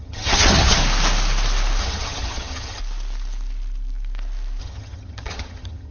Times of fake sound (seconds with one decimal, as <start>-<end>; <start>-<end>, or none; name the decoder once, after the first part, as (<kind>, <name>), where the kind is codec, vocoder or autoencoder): 0.0-0.8 (vocoder, HiFi-GAN); 1.8-2.8; 4.6-5.9